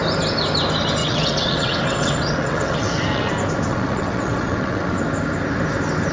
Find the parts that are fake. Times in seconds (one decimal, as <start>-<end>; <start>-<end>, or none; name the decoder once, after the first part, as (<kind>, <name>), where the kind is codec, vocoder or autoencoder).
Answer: 1.0-3.3 (vocoder, WaveNeXt); 3.7-5.0